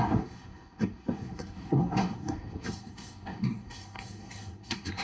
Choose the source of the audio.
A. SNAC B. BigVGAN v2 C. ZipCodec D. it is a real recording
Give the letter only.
A